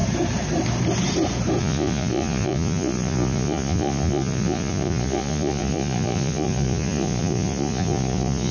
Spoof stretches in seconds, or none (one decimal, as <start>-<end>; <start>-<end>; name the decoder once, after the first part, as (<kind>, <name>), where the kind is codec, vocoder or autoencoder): 1.6-8.5 (vocoder, Vocos)